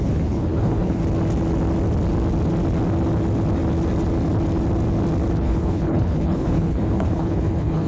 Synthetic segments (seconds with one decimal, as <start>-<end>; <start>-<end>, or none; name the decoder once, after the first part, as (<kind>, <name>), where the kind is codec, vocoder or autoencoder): 0.0-1.0 (codec, HILCodec); 5.3-7.9